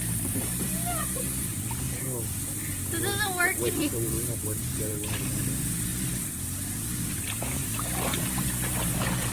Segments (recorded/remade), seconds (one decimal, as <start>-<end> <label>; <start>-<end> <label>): 0.0-5.9 recorded; 5.9-7.2 remade; 7.2-9.3 recorded